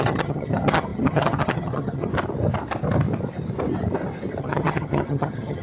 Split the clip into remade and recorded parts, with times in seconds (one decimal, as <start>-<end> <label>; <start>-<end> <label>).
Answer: 0.0-2.1 remade; 2.1-4.4 recorded; 4.4-5.6 remade